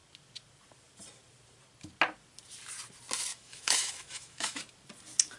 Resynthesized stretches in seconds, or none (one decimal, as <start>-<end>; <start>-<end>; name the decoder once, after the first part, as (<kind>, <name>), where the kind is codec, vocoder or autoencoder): 3.3-4.6 (autoencoder, DAC-VAE)